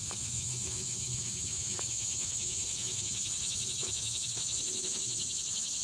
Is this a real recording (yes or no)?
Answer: no